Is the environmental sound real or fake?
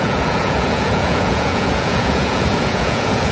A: fake